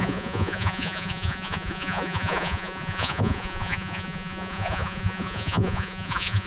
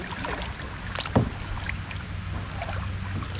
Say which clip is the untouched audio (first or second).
second